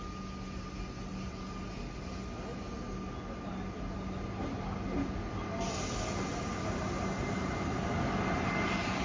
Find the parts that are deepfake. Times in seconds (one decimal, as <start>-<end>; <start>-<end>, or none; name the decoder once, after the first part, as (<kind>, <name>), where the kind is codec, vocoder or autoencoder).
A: none